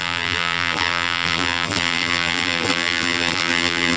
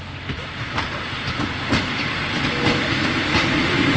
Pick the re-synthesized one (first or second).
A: first